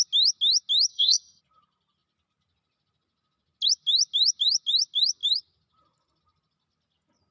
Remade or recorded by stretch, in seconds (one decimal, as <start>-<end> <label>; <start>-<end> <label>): 0.0-0.9 recorded; 0.9-1.4 remade; 1.4-7.3 recorded